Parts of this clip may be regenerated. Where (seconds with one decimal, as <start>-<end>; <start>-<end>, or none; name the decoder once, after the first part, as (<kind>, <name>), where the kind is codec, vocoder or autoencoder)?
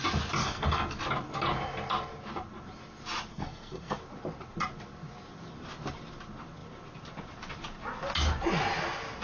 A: 0.4-1.0 (codec, SNAC); 3.3-4.0